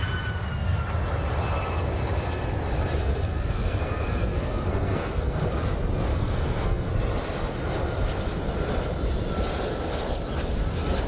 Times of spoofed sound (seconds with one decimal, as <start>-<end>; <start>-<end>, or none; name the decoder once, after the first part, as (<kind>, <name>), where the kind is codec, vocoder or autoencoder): 3.0-5.5 (codec, SNAC); 6.1-6.9